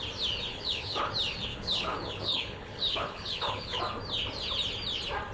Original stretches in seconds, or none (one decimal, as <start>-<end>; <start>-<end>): 0.0-0.5; 1.1-1.5; 3.8-5.3